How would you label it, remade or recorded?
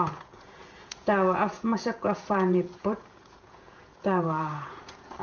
remade